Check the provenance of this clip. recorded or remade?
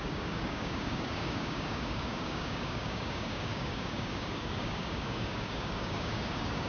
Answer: remade